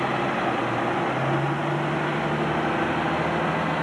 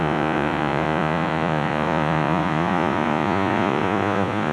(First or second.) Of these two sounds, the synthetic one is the second